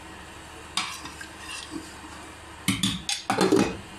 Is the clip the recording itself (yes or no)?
yes